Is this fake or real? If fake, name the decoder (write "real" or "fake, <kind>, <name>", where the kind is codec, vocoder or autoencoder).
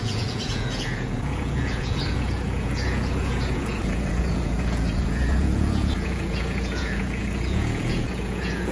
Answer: fake, vocoder, Vocos